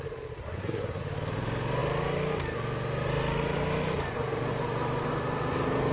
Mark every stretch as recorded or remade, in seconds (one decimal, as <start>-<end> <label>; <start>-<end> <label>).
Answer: 0.0-0.4 recorded; 0.4-1.0 remade; 1.0-5.9 recorded